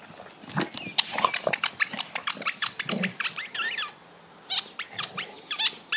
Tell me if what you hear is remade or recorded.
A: recorded